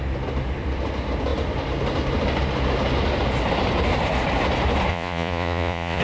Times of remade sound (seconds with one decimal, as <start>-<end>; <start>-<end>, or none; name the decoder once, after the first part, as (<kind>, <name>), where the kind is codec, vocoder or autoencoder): 4.9-6.0 (vocoder, Vocos)